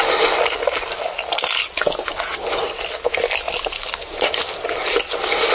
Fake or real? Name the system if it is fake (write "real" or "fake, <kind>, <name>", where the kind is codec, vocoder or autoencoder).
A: real